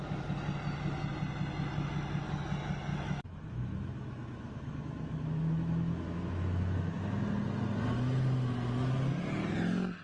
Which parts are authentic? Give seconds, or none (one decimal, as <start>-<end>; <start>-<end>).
0.0-2.9; 7.2-10.0